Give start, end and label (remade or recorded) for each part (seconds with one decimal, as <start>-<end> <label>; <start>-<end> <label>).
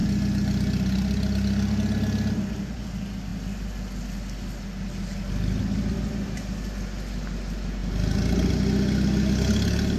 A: 0.0-10.0 recorded